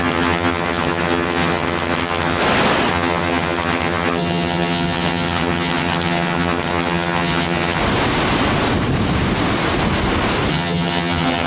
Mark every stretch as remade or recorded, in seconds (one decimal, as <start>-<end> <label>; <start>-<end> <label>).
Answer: 0.0-2.4 remade; 2.4-2.9 recorded; 2.9-7.8 remade; 7.8-10.5 recorded; 10.5-11.5 remade